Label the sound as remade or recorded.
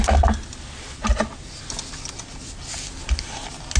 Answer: recorded